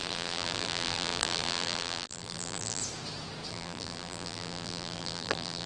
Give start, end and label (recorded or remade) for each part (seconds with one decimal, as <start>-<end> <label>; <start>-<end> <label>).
0.0-2.8 remade; 2.8-3.5 recorded; 3.5-5.7 remade